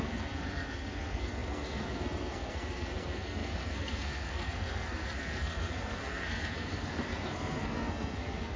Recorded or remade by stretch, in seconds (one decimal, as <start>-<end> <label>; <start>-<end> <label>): 0.0-8.6 remade